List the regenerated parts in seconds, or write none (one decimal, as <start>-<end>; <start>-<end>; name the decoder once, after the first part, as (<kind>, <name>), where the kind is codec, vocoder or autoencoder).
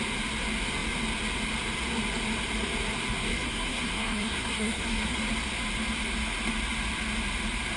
3.3-5.2 (codec, SNAC)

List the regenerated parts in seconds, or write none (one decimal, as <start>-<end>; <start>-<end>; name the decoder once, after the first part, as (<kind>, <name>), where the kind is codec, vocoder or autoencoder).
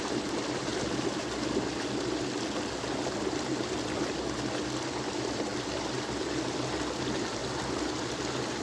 none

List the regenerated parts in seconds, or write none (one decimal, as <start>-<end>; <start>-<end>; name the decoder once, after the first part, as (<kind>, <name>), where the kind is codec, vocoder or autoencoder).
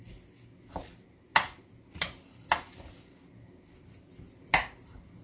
none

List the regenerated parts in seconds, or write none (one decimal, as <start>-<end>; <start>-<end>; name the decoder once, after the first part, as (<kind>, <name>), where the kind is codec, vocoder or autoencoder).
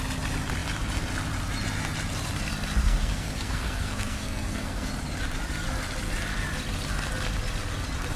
2.8-4.9 (codec, SNAC)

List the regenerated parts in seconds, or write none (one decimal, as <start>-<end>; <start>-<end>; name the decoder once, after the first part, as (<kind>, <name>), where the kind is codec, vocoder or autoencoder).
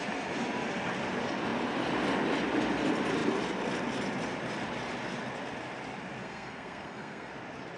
6.2-7.3 (codec, SNAC)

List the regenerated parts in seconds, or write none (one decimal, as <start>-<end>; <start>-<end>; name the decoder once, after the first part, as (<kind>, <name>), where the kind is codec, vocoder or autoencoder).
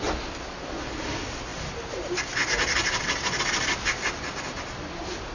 none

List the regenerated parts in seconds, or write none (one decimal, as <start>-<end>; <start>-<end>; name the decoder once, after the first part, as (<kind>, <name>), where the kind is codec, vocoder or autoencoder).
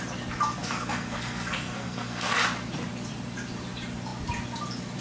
0.6-2.3 (codec, SNAC)